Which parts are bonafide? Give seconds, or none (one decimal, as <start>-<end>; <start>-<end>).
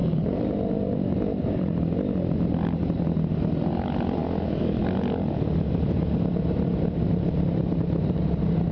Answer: 1.8-8.7